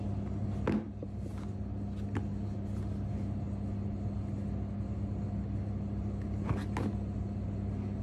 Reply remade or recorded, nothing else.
recorded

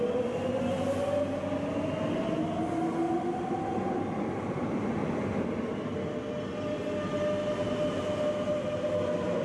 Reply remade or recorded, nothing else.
recorded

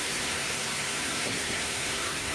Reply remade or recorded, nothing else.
remade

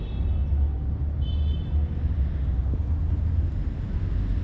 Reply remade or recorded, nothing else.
recorded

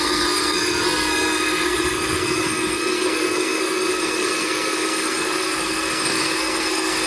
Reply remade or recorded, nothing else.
remade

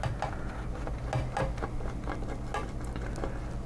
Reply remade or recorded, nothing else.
recorded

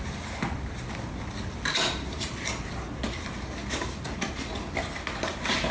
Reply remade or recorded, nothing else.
recorded